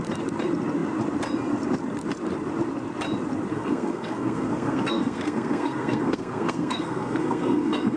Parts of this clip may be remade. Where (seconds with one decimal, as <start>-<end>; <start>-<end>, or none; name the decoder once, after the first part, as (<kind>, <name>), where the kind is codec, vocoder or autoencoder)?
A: 3.5-8.0 (codec, SNAC)